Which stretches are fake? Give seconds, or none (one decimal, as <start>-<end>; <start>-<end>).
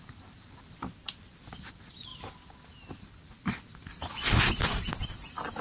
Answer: none